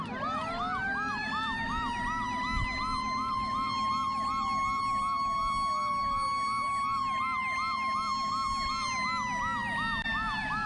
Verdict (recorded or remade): recorded